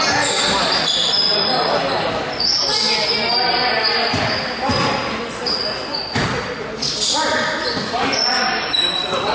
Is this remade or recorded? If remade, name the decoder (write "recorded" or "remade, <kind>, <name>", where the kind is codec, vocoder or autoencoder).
recorded